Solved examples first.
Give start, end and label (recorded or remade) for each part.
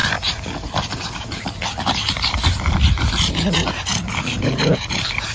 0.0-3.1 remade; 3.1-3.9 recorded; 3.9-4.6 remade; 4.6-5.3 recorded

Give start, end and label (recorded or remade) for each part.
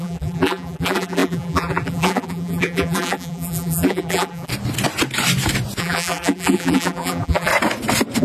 0.0-4.5 remade; 4.5-5.8 recorded; 5.8-7.5 remade; 7.5-8.2 recorded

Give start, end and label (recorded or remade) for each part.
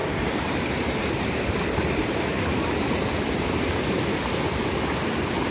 0.0-3.3 remade; 3.3-5.5 recorded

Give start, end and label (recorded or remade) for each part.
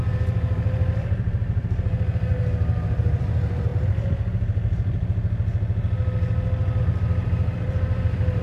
0.0-2.3 remade; 2.3-3.0 recorded; 3.0-3.7 remade; 3.7-6.8 recorded; 6.8-8.4 remade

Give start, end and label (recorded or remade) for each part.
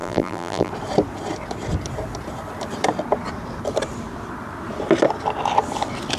0.0-0.7 remade; 0.7-6.2 recorded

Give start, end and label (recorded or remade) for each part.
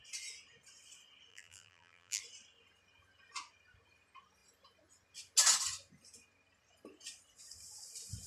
0.0-1.3 recorded; 1.3-2.2 remade; 2.2-8.3 recorded